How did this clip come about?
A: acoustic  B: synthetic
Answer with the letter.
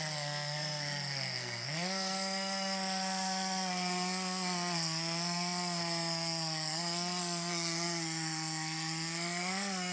B